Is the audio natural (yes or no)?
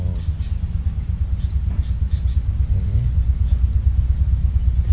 yes